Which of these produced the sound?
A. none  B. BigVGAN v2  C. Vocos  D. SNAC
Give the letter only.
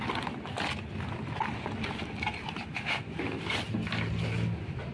A